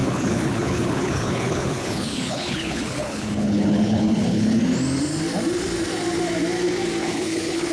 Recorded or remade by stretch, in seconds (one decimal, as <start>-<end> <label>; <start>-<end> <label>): 0.0-4.6 remade; 4.6-7.0 recorded; 7.0-7.7 remade